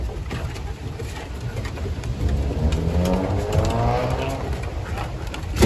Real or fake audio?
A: real